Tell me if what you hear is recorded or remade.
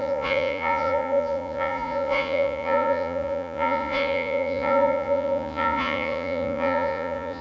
remade